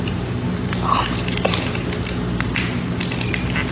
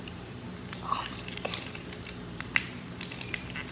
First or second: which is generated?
second